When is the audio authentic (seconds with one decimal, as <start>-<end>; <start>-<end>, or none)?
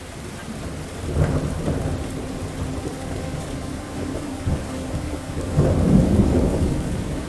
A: 0.0-2.9